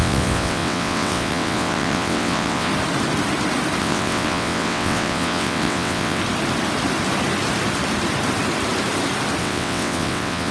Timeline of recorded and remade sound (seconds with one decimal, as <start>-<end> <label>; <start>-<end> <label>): 0.0-2.7 remade; 2.7-3.8 recorded; 3.8-6.2 remade; 6.2-9.4 recorded; 9.4-10.5 remade

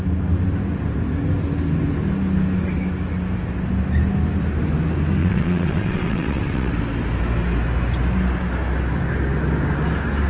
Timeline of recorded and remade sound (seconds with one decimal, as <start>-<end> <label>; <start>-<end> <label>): 0.0-5.2 recorded; 5.2-6.7 remade; 6.7-10.3 recorded

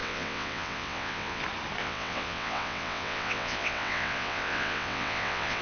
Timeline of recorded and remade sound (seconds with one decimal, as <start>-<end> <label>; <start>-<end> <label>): 0.0-1.4 remade; 1.4-1.8 recorded; 1.8-5.6 remade

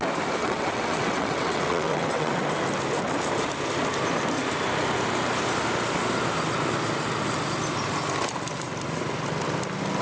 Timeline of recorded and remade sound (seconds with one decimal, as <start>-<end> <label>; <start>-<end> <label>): 0.0-0.4 recorded; 0.4-2.4 remade; 2.4-10.0 recorded

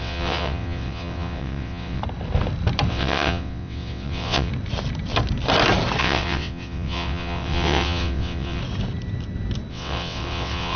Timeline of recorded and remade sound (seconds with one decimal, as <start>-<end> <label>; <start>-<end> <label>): 0.0-2.0 remade; 2.0-2.9 recorded; 2.9-4.5 remade; 4.5-6.0 recorded; 6.0-8.6 remade; 8.6-9.7 recorded; 9.7-10.8 remade

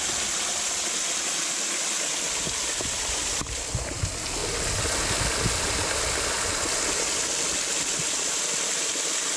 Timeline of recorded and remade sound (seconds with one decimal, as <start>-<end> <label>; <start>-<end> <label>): 0.0-9.4 recorded

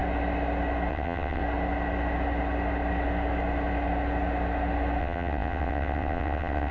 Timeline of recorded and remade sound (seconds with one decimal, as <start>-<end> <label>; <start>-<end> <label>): 0.0-0.9 recorded; 0.9-1.4 remade; 1.4-5.0 recorded; 5.0-6.7 remade

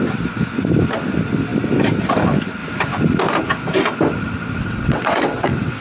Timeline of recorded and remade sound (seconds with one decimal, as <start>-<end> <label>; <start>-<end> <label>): 0.0-4.6 recorded; 4.6-5.8 remade